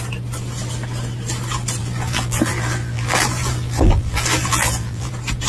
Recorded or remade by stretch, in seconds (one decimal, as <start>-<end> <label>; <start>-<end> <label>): 0.0-1.8 recorded; 1.8-5.1 remade; 5.1-5.5 recorded

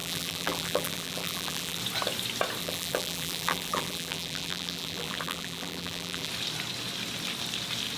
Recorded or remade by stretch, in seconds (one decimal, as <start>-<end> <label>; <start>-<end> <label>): 0.0-1.8 remade; 1.8-2.6 recorded; 2.6-6.3 remade; 6.3-8.0 recorded

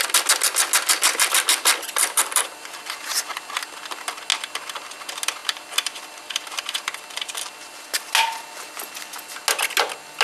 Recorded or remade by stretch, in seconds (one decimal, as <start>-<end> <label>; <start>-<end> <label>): 0.0-1.1 recorded; 1.1-2.9 remade; 2.9-5.4 recorded; 5.4-8.1 remade; 8.1-10.2 recorded

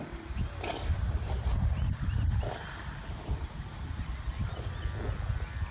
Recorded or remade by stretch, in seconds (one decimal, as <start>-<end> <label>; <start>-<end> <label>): 0.0-5.7 recorded

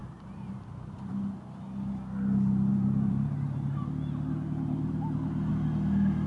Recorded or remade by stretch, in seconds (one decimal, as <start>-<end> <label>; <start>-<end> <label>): 0.0-1.1 remade; 1.1-2.7 recorded; 2.7-5.5 remade; 5.5-6.3 recorded

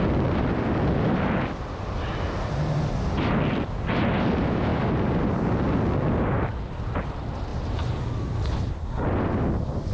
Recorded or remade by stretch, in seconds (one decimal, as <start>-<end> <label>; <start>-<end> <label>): 0.0-9.9 recorded

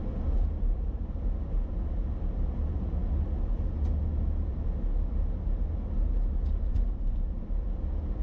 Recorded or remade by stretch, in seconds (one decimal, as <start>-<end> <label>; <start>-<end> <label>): 0.0-8.2 recorded